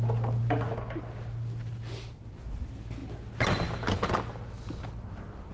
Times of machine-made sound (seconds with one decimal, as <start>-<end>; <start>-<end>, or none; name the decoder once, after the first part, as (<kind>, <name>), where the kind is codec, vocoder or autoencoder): none